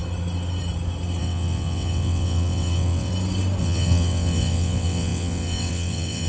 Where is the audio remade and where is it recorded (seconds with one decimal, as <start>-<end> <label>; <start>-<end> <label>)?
0.0-1.2 recorded; 1.2-3.1 remade; 3.1-3.6 recorded; 3.6-6.3 remade